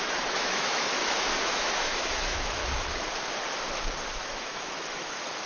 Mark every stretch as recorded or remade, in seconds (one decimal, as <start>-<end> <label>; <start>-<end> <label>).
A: 0.0-2.6 remade; 2.6-4.2 recorded; 4.2-5.5 remade

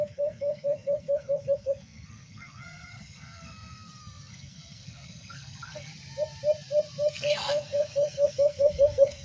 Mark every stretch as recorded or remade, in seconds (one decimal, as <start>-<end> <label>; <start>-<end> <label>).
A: 0.0-5.9 remade; 5.9-7.1 recorded; 7.1-9.2 remade